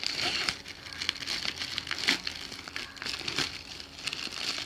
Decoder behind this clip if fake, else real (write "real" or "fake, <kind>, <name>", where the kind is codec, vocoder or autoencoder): real